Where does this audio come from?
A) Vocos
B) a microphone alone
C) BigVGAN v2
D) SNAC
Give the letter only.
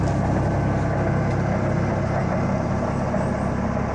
B